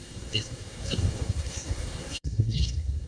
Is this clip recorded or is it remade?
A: remade